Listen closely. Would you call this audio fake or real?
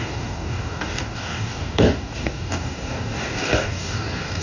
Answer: fake